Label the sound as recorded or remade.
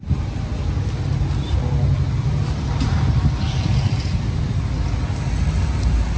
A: recorded